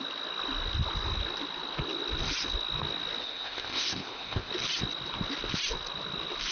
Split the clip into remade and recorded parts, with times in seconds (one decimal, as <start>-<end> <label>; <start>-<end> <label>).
0.0-3.2 recorded; 3.2-4.5 remade; 4.5-6.5 recorded